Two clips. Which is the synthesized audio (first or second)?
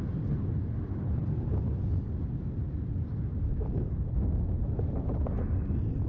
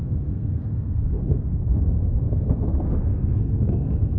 second